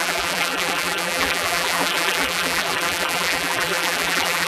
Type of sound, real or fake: fake